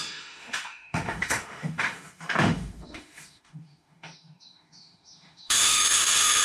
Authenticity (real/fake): fake